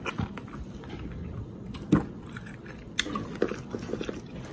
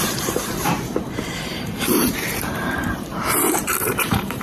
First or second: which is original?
first